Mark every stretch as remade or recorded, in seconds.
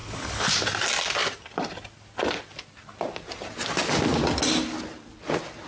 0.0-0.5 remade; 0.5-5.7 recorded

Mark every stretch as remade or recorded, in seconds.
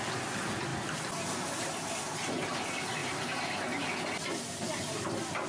0.0-3.0 recorded; 3.0-3.8 remade; 3.8-5.5 recorded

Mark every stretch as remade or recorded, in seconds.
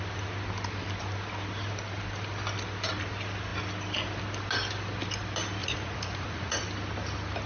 0.0-5.6 recorded; 5.6-6.6 remade; 6.6-7.5 recorded